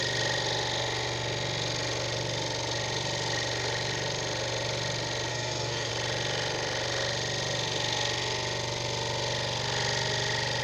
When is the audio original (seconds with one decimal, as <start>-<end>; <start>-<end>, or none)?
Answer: 0.0-5.3; 5.9-10.6